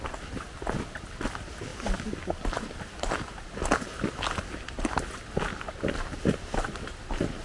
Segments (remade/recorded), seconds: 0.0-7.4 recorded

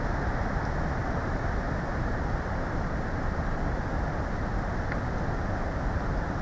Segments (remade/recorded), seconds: 0.0-1.0 recorded; 1.0-4.8 remade; 4.8-6.4 recorded

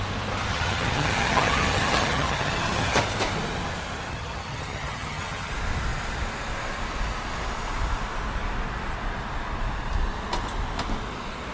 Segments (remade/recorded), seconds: 0.0-0.5 recorded; 0.5-3.0 remade; 3.0-4.1 recorded; 4.1-5.5 remade; 5.5-11.5 recorded

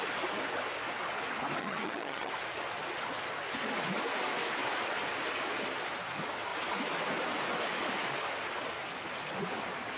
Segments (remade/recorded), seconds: 0.0-1.6 recorded; 1.6-2.3 remade; 2.3-10.0 recorded

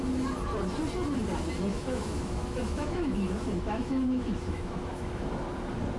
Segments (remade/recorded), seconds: 0.0-1.7 recorded; 1.7-5.3 remade; 5.3-6.0 recorded

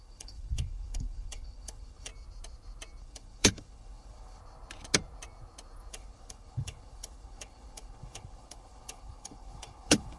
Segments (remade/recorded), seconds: 0.0-2.1 remade; 2.1-3.0 recorded; 3.0-4.4 remade; 4.4-5.9 recorded; 5.9-10.2 remade

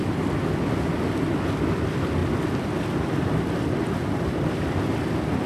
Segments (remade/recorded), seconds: 0.0-2.2 recorded; 2.2-3.3 remade; 3.3-5.5 recorded